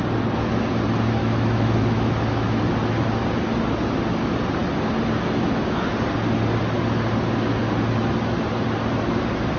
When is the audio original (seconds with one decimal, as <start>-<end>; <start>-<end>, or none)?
0.0-1.2; 2.6-9.6